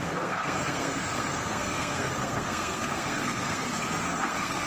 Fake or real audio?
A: fake